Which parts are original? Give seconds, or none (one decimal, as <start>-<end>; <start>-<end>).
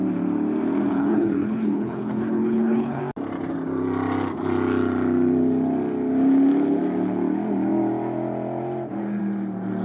0.0-0.9; 3.0-9.8